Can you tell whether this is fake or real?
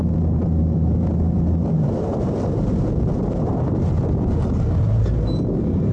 real